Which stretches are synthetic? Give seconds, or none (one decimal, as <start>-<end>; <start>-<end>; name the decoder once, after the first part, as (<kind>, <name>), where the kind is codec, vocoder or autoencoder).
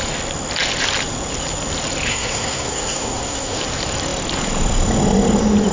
2.1-3.6 (codec, SNAC)